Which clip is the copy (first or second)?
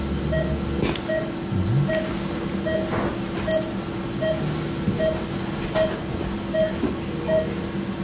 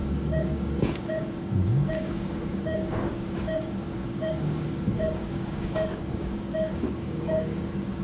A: second